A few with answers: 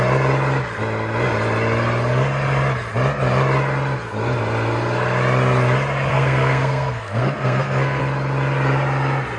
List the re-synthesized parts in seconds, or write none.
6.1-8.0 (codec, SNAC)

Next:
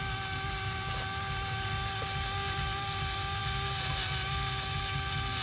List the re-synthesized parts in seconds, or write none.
none

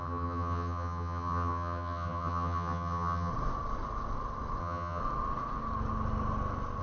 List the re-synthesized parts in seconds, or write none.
0.0-3.3 (vocoder, HiFi-GAN); 4.6-5.0

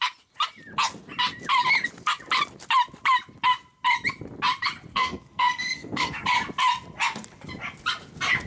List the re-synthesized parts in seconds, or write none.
4.9-6.2 (codec, SNAC)